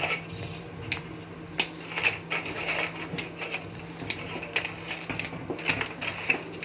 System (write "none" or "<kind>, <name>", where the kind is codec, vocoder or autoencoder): none